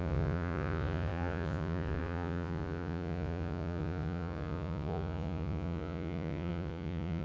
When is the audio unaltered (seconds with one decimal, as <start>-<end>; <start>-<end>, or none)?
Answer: none